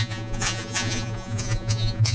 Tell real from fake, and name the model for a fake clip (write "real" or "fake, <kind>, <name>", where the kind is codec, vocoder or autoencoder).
fake, vocoder, Vocos